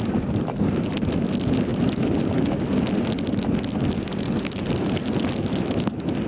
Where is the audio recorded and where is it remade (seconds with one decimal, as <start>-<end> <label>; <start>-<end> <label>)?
0.0-6.3 recorded